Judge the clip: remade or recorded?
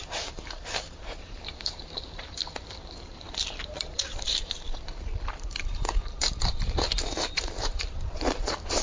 remade